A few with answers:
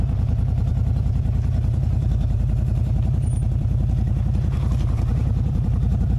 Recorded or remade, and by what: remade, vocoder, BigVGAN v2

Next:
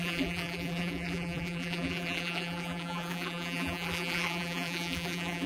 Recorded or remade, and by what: remade, vocoder, BigVGAN v2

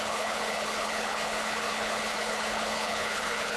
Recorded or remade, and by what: remade, codec, HILCodec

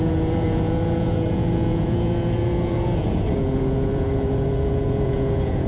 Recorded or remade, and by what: remade, vocoder, Vocos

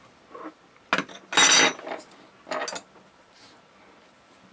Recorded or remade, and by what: recorded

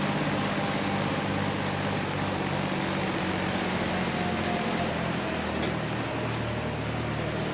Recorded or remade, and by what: recorded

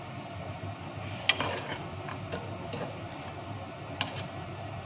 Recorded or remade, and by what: recorded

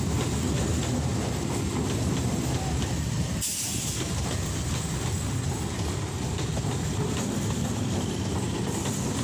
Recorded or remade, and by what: recorded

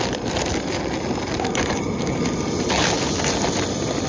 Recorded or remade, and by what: recorded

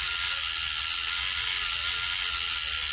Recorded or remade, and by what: recorded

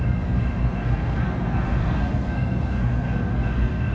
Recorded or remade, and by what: remade, codec, SNAC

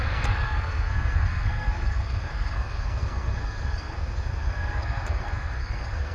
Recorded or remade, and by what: remade, codec, SNAC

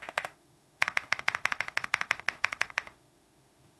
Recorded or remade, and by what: remade, autoencoder, DAC-VAE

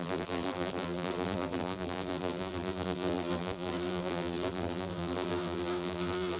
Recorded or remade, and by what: remade, vocoder, BigVGAN v2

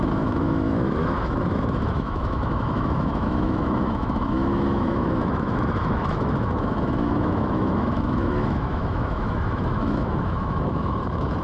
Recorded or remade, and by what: remade, autoencoder, DAC-VAE